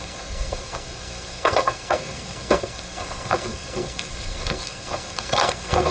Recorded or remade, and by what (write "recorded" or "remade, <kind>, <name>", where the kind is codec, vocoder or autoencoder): remade, codec, SNAC